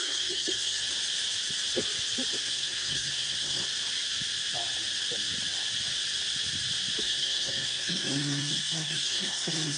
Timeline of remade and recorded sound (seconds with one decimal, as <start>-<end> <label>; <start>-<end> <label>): 0.0-0.8 remade; 0.8-2.4 recorded; 2.4-3.6 remade; 3.6-7.0 recorded; 7.0-9.8 remade